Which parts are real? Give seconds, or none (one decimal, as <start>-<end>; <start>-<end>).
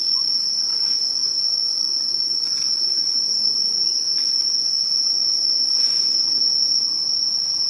0.0-7.7